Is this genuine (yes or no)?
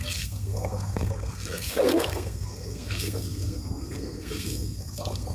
no